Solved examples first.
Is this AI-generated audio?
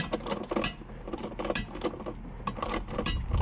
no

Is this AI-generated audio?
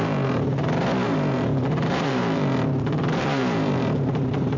yes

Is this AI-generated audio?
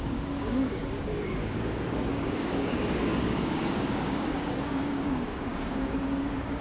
yes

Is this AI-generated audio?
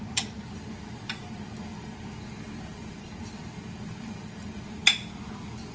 no